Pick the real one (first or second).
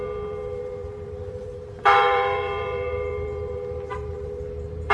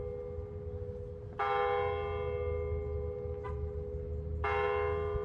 second